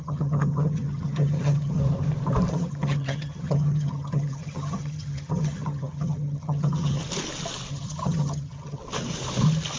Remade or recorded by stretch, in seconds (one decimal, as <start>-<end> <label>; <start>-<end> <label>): 0.0-1.8 remade; 1.8-2.5 recorded; 2.5-7.0 remade; 7.0-7.7 recorded; 7.7-8.8 remade; 8.8-9.8 recorded